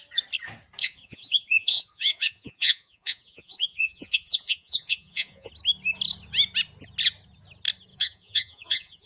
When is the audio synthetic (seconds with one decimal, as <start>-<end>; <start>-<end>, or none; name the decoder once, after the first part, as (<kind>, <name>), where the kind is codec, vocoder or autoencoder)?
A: 0.8-5.5 (vocoder, Vocos); 7.9-9.1